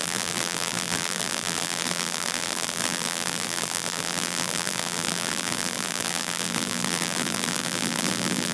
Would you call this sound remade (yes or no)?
yes